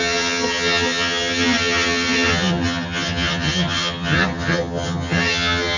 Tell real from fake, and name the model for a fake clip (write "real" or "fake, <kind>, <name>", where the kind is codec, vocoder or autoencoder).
fake, vocoder, HiFi-GAN